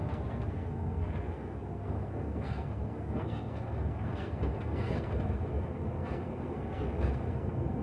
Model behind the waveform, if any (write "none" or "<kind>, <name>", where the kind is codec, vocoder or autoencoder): codec, SNAC